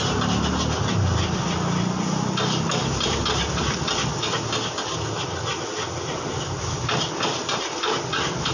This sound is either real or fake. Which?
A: real